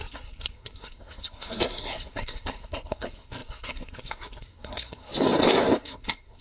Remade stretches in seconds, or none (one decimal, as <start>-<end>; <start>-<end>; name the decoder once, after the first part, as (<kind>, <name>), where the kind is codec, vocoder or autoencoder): 0.0-5.1 (codec, SNAC); 5.8-6.4